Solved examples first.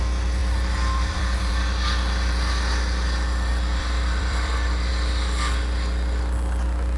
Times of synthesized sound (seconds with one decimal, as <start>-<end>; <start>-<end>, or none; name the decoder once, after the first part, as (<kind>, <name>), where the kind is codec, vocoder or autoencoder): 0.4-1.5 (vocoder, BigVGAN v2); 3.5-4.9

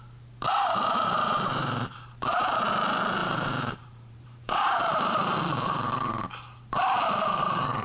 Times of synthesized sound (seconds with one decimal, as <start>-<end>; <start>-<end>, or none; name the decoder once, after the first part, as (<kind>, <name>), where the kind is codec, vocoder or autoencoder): 0.5-2.6 (vocoder, BigVGAN v2); 3.2-5.2

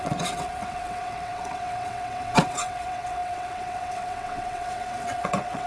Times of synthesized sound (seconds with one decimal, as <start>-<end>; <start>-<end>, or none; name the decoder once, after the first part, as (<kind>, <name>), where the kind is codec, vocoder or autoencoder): 0.0-5.7 (vocoder, WaveNeXt)